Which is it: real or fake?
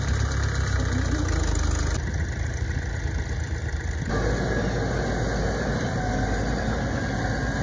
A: real